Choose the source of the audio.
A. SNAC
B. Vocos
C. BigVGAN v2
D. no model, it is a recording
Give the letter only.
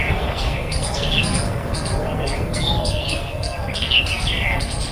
A